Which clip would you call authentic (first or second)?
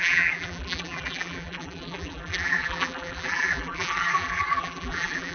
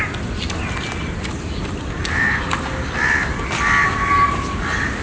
second